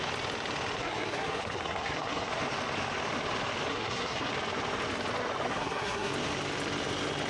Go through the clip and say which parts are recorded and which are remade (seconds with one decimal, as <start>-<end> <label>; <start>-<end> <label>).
0.0-0.8 recorded; 0.8-2.3 remade; 2.3-3.7 recorded; 3.7-4.3 remade; 4.3-5.5 recorded; 5.5-6.1 remade; 6.1-7.3 recorded